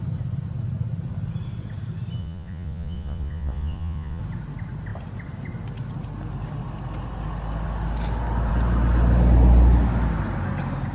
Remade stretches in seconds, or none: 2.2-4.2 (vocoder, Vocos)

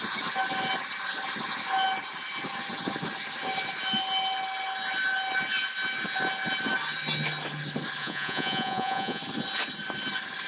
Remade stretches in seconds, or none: 8.0-9.2 (vocoder, Vocos)

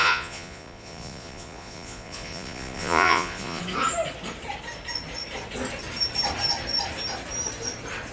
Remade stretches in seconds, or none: 0.0-3.6 (vocoder, Vocos)

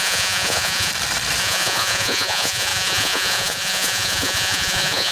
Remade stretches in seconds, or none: 0.0-0.9 (vocoder, Vocos); 1.4-5.1